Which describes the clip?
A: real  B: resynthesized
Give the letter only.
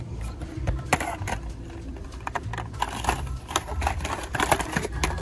B